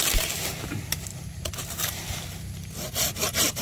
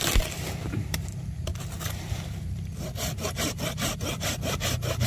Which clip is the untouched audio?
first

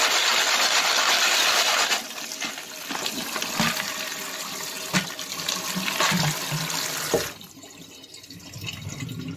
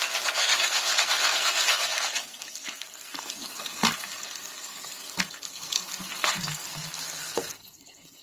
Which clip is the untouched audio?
first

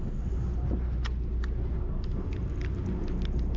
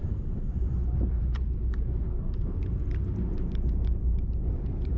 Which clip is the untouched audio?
first